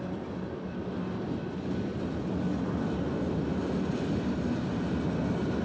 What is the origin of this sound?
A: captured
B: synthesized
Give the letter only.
A